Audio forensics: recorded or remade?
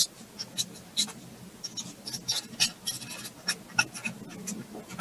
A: recorded